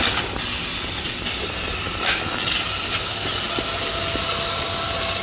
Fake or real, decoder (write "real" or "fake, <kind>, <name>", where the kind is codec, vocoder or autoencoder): real